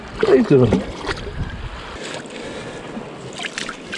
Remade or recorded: recorded